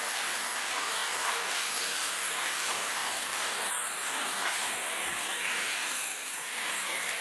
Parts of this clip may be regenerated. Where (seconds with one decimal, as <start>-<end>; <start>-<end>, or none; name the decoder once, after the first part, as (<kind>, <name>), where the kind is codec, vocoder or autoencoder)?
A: 0.0-7.2 (codec, DAC)